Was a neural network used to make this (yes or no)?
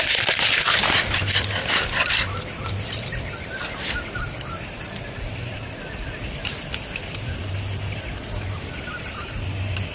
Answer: yes